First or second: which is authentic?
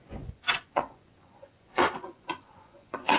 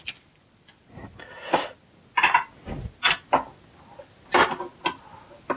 second